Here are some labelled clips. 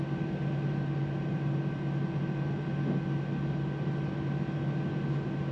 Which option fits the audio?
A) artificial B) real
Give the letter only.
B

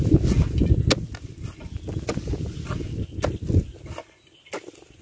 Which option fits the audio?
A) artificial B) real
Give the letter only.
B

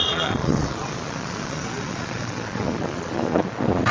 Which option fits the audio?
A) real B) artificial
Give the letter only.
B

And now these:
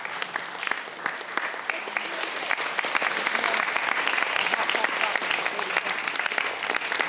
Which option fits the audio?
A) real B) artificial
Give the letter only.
A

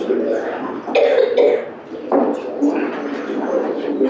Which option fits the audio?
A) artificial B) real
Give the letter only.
B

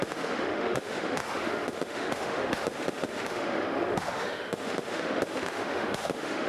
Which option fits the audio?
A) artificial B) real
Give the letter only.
A